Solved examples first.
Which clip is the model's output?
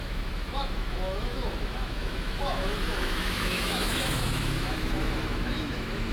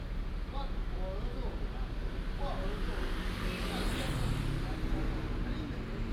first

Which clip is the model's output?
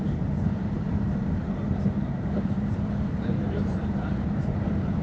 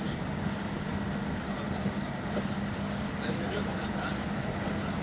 first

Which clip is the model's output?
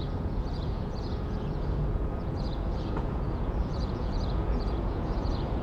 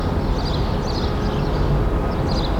first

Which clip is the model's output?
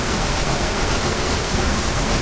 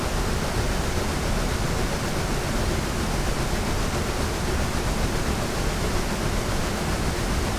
first